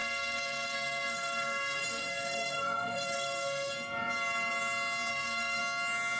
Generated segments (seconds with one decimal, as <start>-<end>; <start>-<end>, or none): 0.0-3.7; 5.1-5.6